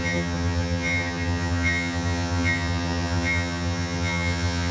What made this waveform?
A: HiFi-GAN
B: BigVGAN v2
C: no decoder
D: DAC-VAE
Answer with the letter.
A